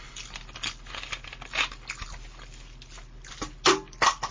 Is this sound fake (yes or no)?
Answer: no